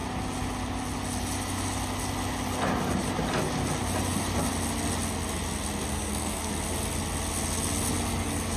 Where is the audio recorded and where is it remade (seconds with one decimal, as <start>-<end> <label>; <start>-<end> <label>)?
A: 0.0-5.9 recorded; 5.9-6.5 remade; 6.5-8.6 recorded